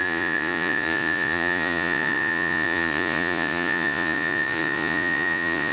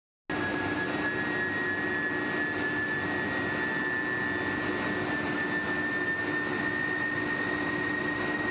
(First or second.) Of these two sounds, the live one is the second